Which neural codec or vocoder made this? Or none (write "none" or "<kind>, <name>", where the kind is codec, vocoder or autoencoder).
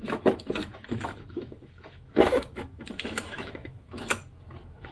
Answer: autoencoder, DAC-VAE